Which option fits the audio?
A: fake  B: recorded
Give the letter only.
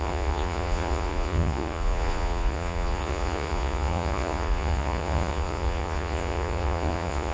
A